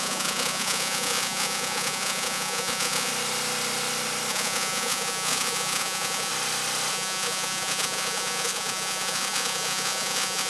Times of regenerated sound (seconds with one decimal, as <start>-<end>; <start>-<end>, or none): 0.0-3.1; 4.3-6.3; 6.9-10.5